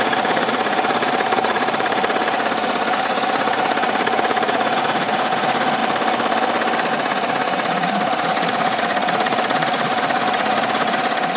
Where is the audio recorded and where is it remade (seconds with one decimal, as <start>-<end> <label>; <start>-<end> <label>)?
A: 0.0-5.8 remade; 5.8-6.9 recorded; 6.9-11.4 remade